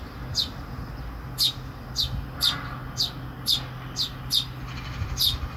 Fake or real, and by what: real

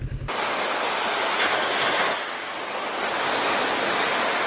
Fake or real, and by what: real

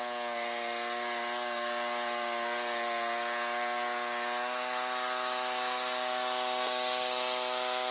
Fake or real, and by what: real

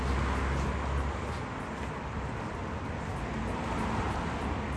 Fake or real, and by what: real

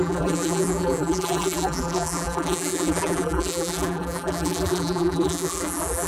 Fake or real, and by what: fake, vocoder, BigVGAN v2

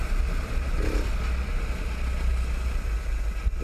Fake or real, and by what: real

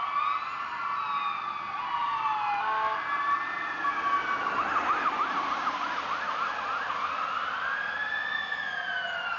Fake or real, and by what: real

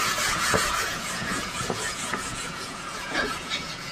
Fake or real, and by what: fake, vocoder, Vocos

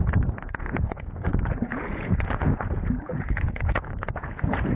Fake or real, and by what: fake, vocoder, Vocos